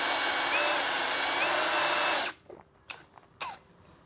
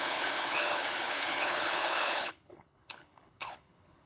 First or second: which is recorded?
first